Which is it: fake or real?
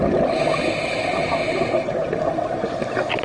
real